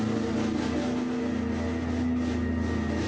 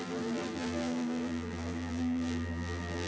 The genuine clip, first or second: first